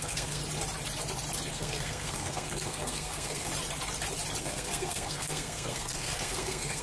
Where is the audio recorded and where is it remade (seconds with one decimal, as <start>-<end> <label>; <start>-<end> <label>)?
0.0-0.4 remade; 0.4-1.5 recorded; 1.5-3.5 remade; 3.5-4.4 recorded; 4.4-6.8 remade